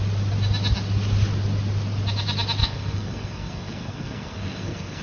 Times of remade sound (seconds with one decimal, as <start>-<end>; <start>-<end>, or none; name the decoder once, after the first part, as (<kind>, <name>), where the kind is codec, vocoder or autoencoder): 2.6-5.0 (codec, SNAC)